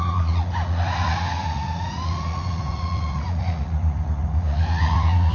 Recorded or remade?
remade